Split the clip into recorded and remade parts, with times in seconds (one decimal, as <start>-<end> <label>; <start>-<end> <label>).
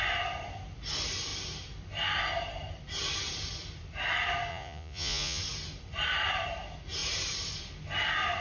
0.0-4.5 recorded; 4.5-5.4 remade; 5.4-8.4 recorded